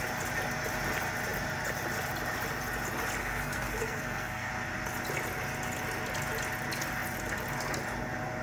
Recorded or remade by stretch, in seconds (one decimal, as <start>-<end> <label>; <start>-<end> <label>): 0.0-3.2 recorded; 3.2-4.5 remade; 4.5-8.4 recorded